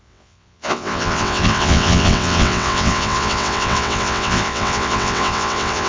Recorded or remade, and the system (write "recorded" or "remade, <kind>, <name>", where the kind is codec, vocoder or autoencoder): remade, vocoder, WaveNeXt